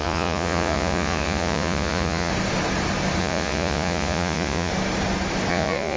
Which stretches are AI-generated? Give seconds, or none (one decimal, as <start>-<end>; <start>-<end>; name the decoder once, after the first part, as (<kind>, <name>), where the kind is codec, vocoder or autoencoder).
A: 0.0-2.3 (vocoder, Vocos); 3.2-4.7; 5.5-6.0